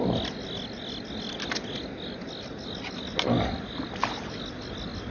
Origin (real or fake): real